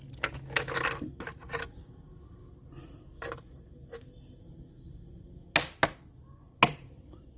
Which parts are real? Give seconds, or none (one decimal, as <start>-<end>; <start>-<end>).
0.0-7.4